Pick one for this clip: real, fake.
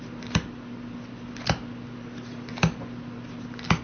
real